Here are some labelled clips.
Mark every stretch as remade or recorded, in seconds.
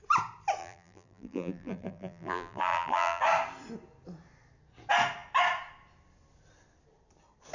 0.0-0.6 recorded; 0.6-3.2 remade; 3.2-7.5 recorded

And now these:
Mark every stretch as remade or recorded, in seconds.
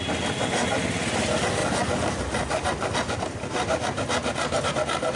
0.0-5.2 recorded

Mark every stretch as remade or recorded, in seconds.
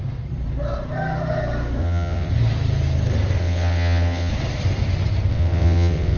0.0-1.8 recorded; 1.8-2.3 remade; 2.3-3.4 recorded; 3.4-4.3 remade; 4.3-5.3 recorded; 5.3-6.2 remade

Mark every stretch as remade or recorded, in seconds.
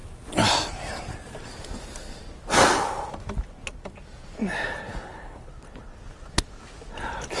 0.0-4.9 recorded; 4.9-5.5 remade; 5.5-7.4 recorded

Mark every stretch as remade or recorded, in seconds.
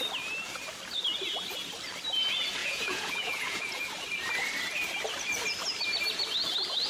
0.0-2.6 recorded; 2.6-3.9 remade; 3.9-6.9 recorded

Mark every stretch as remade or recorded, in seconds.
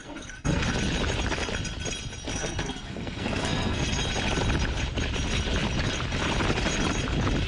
0.0-0.7 remade; 0.7-2.3 recorded; 2.3-4.0 remade; 4.0-7.5 recorded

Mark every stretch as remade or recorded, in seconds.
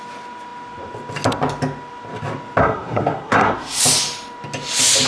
0.0-2.6 recorded; 2.6-3.8 remade; 3.8-5.1 recorded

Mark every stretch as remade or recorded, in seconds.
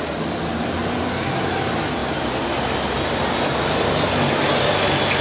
0.0-5.2 recorded